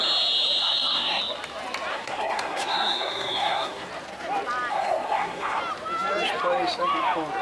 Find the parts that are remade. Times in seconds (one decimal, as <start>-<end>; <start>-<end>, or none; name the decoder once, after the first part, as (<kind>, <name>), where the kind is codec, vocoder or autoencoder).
0.6-1.2 (codec, SNAC); 1.9-3.9; 4.7-5.6